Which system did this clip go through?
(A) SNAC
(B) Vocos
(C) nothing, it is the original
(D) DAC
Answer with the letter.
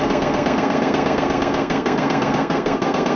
A